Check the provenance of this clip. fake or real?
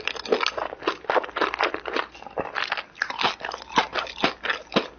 real